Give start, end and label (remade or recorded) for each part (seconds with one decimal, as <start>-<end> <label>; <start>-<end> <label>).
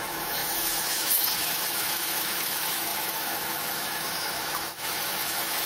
0.0-5.7 remade